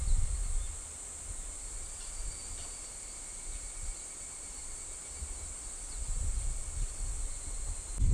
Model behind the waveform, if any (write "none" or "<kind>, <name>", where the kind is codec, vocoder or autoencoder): none